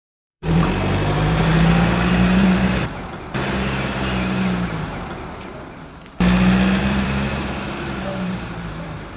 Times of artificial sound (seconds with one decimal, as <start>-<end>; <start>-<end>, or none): 0.0-1.5; 2.3-5.5; 6.8-9.2